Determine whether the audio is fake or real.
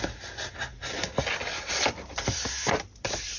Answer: real